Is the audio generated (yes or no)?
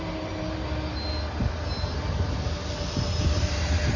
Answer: no